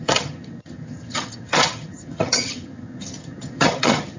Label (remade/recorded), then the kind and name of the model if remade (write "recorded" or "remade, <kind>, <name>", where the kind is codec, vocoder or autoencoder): remade, vocoder, HiFi-GAN